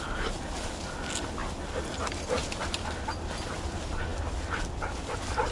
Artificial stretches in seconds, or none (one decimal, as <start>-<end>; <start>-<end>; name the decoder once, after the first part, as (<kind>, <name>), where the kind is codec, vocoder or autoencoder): 1.4-2.0 (vocoder, BigVGAN v2); 2.4-3.5